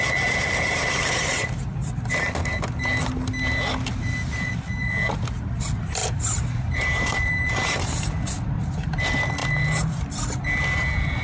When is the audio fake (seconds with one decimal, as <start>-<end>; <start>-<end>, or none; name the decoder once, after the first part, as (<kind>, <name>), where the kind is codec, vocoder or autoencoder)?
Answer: 6.0-8.1 (vocoder, BigVGAN v2)